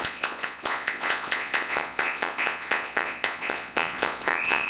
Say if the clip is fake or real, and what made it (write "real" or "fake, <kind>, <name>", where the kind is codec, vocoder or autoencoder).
fake, vocoder, Vocos